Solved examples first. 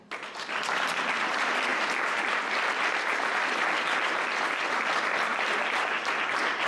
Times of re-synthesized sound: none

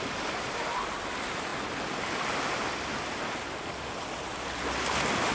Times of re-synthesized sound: none